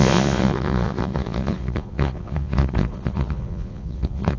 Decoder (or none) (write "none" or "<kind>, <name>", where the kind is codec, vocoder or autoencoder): vocoder, Vocos